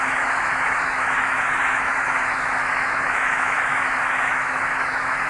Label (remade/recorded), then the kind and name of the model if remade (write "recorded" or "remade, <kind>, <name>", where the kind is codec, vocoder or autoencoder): remade, autoencoder, DAC-VAE